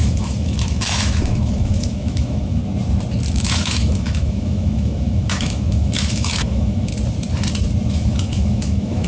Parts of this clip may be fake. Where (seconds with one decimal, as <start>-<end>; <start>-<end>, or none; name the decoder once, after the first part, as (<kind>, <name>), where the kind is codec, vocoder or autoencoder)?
0.0-2.6 (autoencoder, DAC-VAE); 3.3-6.9; 7.9-9.1